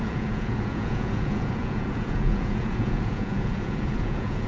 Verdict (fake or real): fake